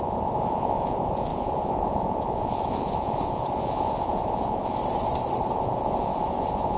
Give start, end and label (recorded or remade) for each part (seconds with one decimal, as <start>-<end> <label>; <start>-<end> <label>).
0.0-4.8 remade; 4.8-5.5 recorded; 5.5-6.8 remade